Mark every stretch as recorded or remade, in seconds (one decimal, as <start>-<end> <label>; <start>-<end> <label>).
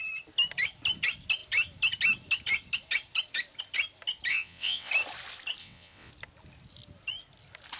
0.0-4.3 recorded; 4.3-4.9 remade; 4.9-5.6 recorded; 5.6-6.1 remade; 6.1-7.8 recorded